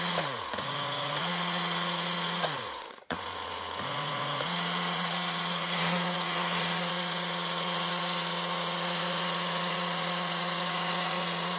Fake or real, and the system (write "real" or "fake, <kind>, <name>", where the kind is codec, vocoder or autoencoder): fake, vocoder, Vocos